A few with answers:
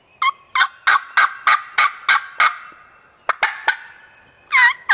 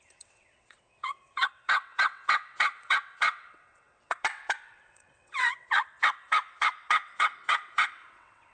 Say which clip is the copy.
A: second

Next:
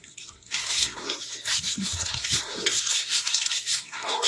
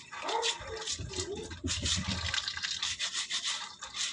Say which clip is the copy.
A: first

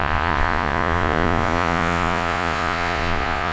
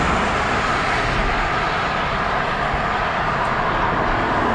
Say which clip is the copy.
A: first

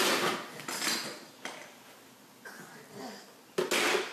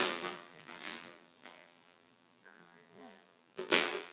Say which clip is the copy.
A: second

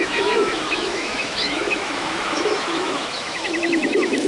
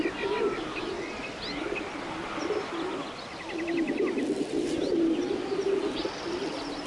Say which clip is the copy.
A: first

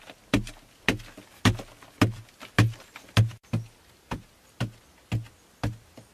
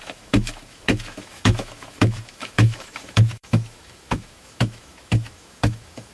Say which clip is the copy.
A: second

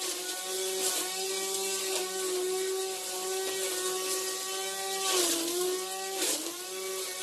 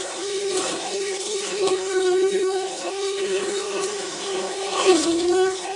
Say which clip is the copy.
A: second